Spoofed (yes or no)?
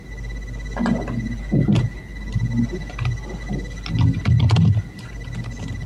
no